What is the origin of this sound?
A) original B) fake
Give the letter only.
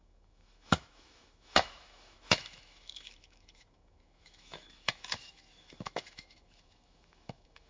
B